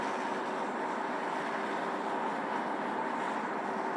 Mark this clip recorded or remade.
recorded